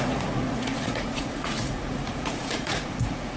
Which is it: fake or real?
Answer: fake